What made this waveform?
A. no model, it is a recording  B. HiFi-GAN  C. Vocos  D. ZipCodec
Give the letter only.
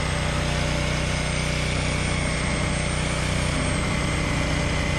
A